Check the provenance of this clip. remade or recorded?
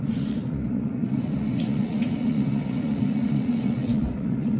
remade